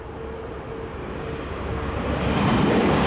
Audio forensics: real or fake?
real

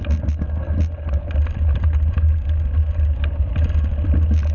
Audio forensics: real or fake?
real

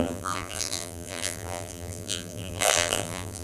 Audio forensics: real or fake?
fake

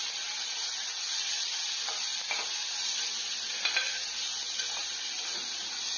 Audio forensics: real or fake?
real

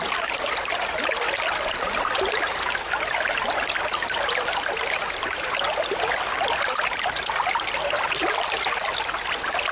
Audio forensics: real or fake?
real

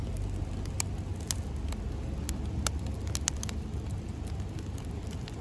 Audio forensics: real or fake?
real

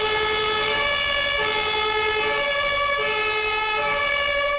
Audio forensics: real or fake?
fake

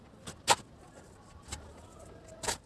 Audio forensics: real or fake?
real